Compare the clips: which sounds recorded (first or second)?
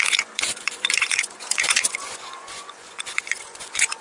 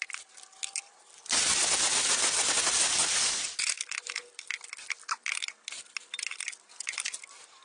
second